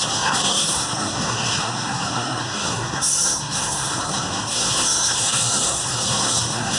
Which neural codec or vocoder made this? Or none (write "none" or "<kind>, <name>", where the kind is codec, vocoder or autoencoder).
codec, SNAC